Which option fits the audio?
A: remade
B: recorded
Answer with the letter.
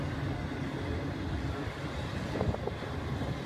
B